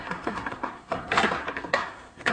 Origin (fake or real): fake